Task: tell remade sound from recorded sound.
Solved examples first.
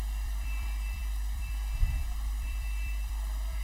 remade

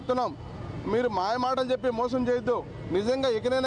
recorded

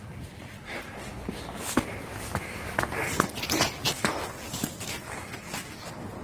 recorded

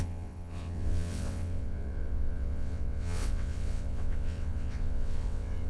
remade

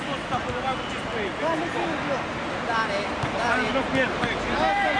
recorded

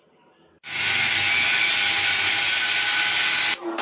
recorded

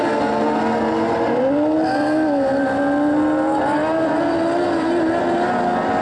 recorded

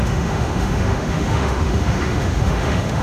remade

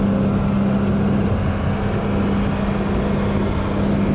recorded